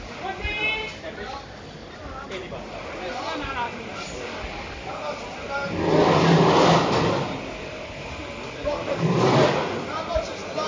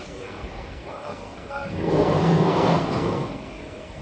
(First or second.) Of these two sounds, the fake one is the second